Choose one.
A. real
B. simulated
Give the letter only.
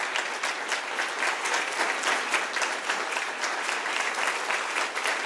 A